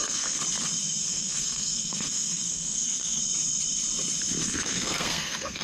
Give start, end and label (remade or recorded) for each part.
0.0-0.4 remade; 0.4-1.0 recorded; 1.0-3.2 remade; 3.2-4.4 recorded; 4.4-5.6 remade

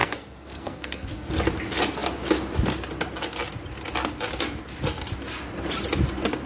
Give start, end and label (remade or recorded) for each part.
0.0-1.3 remade; 1.3-6.5 recorded

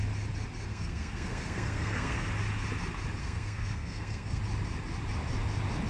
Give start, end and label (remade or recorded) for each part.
0.0-0.7 recorded; 0.7-2.3 remade; 2.3-3.2 recorded; 3.2-4.4 remade; 4.4-5.9 recorded

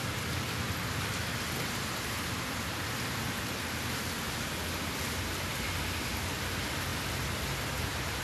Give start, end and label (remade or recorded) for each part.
0.0-8.2 recorded

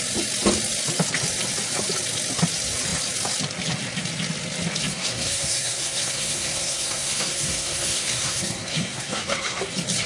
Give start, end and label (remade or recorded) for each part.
0.0-4.9 recorded; 4.9-9.6 remade; 9.6-10.1 recorded

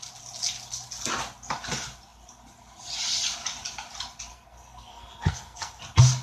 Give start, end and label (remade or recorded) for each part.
0.0-4.3 recorded; 4.3-5.8 remade; 5.8-6.2 recorded

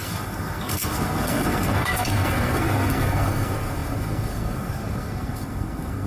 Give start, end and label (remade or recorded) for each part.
0.0-6.1 remade